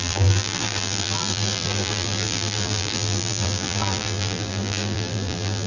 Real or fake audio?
fake